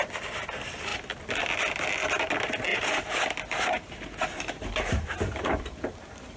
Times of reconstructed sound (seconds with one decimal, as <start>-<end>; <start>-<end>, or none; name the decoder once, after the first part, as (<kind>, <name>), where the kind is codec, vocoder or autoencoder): 2.7-5.8 (vocoder, BigVGAN v2)